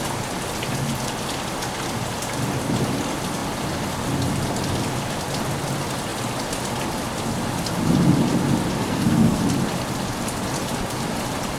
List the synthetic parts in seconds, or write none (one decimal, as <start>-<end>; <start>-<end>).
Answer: 8.8-9.4